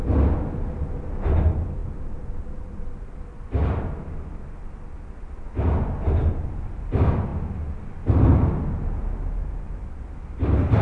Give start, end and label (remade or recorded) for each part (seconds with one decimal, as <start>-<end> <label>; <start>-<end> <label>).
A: 0.0-10.8 recorded